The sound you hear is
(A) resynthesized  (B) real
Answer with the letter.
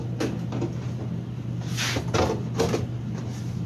B